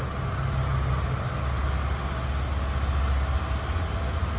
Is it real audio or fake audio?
real